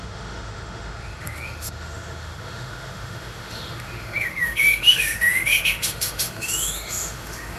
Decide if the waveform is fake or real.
fake